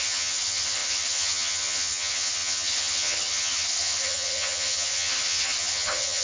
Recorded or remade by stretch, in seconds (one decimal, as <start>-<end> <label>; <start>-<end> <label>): 0.0-6.2 remade